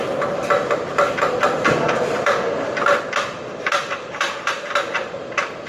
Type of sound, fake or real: real